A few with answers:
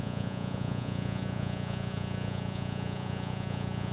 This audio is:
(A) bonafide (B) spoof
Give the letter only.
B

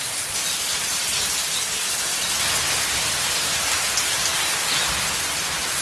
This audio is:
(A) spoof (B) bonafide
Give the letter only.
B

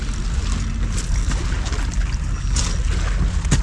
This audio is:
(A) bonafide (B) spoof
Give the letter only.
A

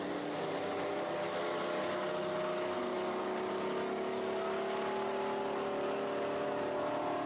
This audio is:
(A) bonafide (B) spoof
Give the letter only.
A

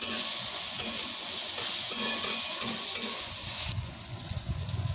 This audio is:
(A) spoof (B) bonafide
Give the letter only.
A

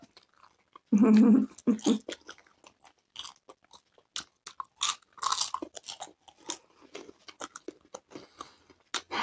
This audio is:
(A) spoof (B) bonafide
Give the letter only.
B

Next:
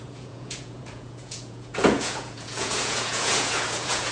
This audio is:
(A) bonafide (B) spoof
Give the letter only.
B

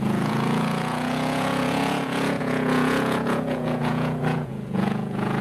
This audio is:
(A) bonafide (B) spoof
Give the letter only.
B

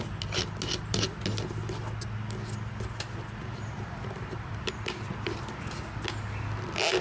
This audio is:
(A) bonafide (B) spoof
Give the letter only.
A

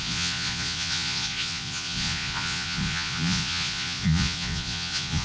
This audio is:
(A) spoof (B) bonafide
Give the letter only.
A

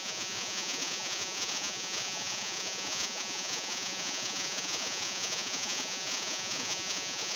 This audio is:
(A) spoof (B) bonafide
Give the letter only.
A